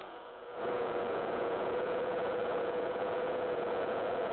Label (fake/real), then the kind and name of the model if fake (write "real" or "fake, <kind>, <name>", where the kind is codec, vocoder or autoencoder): fake, vocoder, Vocos